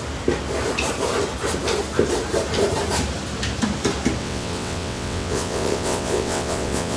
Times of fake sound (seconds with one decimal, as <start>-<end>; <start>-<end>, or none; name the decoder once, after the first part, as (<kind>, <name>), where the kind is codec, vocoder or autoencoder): 4.2-7.0 (vocoder, WaveNeXt)